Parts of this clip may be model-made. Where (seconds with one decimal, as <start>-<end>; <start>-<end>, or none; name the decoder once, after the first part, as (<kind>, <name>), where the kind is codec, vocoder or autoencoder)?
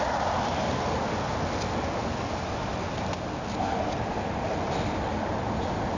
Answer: none